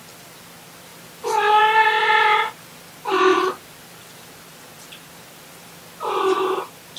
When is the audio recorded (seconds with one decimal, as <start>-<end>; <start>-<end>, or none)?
0.0-7.0